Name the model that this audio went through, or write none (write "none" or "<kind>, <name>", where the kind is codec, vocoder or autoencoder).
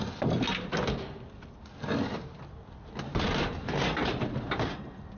none